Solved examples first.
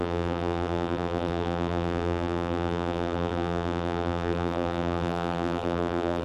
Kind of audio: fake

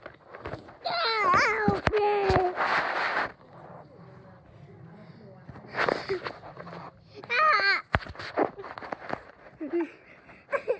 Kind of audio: real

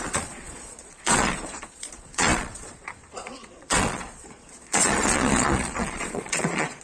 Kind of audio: fake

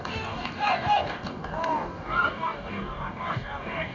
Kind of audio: fake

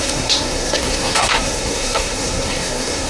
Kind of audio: fake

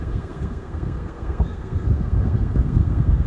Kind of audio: fake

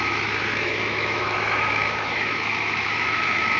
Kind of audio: fake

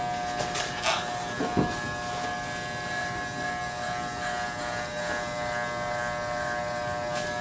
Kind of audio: real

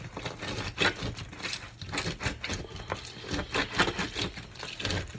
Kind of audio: real